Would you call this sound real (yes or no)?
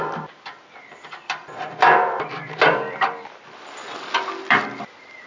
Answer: no